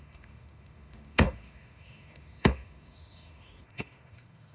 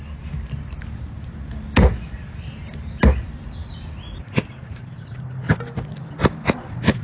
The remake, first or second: first